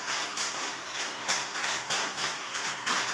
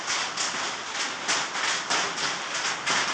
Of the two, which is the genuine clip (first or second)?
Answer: second